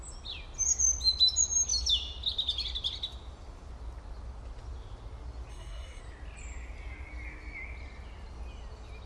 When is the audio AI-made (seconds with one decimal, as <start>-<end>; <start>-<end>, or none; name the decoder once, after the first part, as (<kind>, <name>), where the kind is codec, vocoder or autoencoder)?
5.5-6.0 (codec, SNAC)